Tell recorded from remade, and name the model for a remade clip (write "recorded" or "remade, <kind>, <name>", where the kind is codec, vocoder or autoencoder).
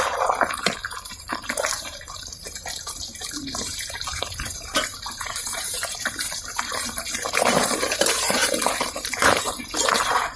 remade, vocoder, BigVGAN v2